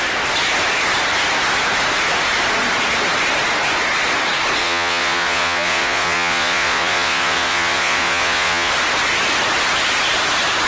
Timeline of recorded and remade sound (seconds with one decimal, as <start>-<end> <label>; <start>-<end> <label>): 0.0-4.6 recorded; 4.6-8.7 remade; 8.7-10.7 recorded